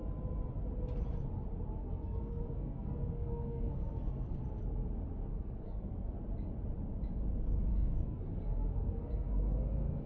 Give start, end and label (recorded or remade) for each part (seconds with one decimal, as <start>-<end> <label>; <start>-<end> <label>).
0.0-1.8 recorded; 1.8-4.4 remade; 4.4-5.3 recorded; 5.3-6.1 remade; 6.1-7.7 recorded; 7.7-10.1 remade